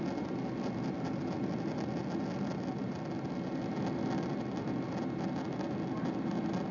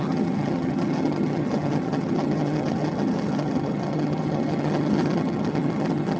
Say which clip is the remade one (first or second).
second